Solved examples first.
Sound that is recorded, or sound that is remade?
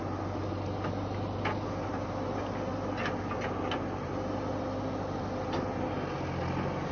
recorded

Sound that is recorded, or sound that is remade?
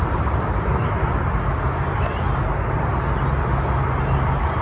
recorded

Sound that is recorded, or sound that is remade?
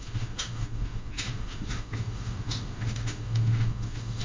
remade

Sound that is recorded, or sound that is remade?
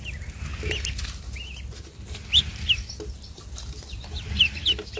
recorded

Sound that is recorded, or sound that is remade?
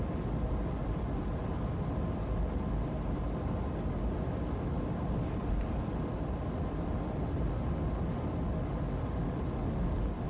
recorded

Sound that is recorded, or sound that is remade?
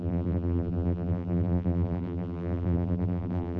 remade